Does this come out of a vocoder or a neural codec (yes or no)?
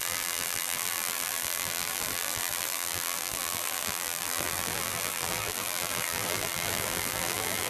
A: yes